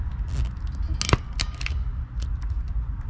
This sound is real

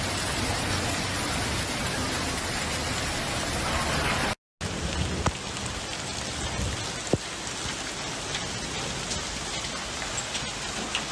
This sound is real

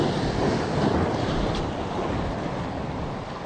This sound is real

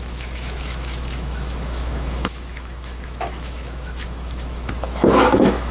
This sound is fake